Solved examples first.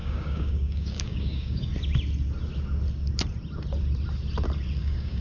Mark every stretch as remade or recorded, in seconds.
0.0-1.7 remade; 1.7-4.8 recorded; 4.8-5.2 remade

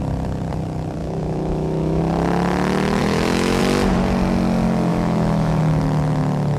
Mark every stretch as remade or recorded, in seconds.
0.0-1.0 recorded; 1.0-2.0 remade; 2.0-3.0 recorded; 3.0-3.6 remade; 3.6-4.9 recorded; 4.9-5.6 remade; 5.6-6.6 recorded

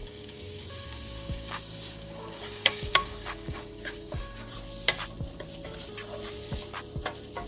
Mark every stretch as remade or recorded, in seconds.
0.0-4.5 remade; 4.5-7.5 recorded

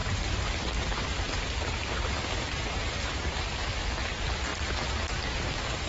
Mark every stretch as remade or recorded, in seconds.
0.0-3.5 remade; 3.5-4.5 recorded; 4.5-5.2 remade; 5.2-5.9 recorded

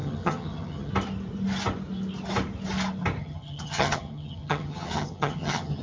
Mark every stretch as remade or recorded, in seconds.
0.0-0.9 remade; 0.9-3.2 recorded; 3.2-5.8 remade

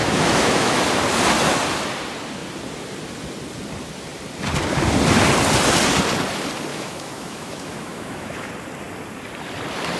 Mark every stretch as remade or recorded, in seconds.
0.0-0.8 remade; 0.8-6.7 recorded; 6.7-8.5 remade; 8.5-10.0 recorded